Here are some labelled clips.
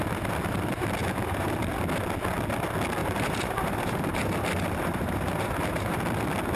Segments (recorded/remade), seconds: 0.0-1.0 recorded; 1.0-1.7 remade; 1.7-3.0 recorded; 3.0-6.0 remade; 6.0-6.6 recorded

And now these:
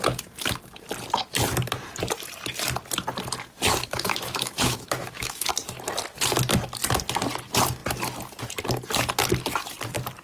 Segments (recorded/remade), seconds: 0.0-3.7 recorded; 3.7-5.5 remade; 5.5-10.2 recorded

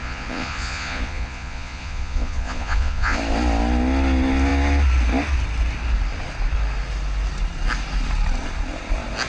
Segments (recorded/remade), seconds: 0.0-3.2 remade; 3.2-9.3 recorded